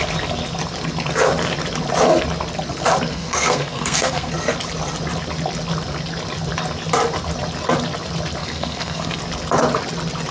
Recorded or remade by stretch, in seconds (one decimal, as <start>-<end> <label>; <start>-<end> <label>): 0.0-3.1 recorded; 3.1-4.3 remade; 4.3-8.4 recorded; 8.4-9.2 remade; 9.2-10.3 recorded